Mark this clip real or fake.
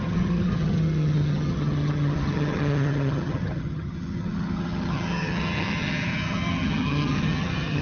fake